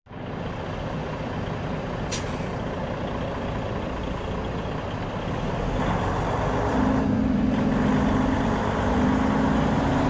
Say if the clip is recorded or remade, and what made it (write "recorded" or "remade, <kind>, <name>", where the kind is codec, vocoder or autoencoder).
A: recorded